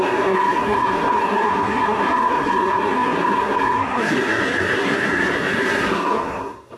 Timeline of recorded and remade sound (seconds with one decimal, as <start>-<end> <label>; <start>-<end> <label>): 0.0-6.8 remade